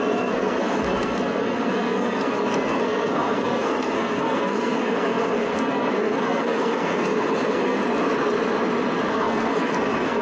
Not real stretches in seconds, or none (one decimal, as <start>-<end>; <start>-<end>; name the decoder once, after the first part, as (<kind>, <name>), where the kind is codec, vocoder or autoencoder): 0.0-7.8 (codec, SNAC); 9.1-10.2

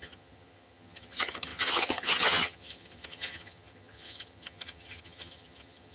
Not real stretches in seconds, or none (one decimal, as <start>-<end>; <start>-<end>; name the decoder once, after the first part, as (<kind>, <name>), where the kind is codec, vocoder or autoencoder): 0.0-5.9 (vocoder, HiFi-GAN)

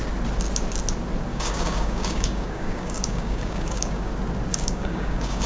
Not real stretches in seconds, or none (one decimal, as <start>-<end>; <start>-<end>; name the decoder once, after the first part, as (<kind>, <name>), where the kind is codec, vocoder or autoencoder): 1.3-4.1 (codec, DAC); 4.5-5.5

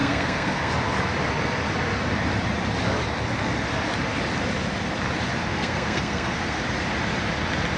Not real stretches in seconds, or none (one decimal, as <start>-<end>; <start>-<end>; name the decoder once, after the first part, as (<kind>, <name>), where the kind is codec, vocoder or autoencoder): 0.0-0.7 (codec, SNAC); 5.5-6.6